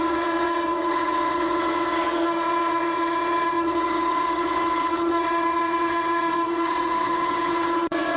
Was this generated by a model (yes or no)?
yes